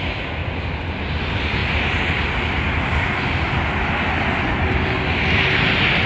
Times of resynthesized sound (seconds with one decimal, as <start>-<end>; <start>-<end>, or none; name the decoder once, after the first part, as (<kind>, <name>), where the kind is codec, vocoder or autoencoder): none